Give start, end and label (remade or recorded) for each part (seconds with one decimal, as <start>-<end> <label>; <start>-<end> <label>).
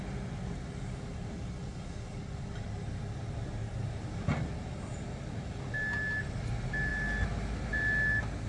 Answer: 0.0-8.5 recorded